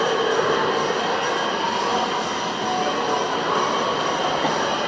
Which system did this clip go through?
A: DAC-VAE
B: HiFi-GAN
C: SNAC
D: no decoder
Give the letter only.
D